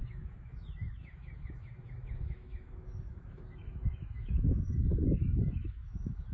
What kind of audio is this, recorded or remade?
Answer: remade